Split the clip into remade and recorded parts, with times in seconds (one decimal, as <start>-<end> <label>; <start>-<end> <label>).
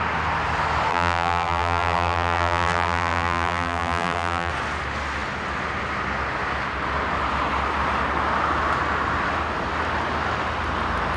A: 0.0-0.9 recorded; 0.9-4.5 remade; 4.5-11.2 recorded